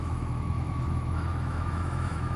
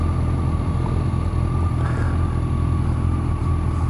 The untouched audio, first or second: second